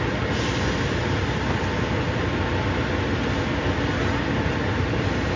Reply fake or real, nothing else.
real